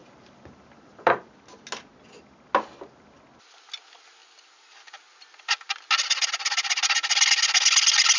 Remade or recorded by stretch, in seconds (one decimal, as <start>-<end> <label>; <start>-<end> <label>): 0.0-8.2 recorded